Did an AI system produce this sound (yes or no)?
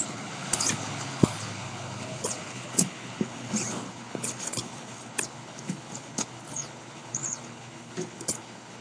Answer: yes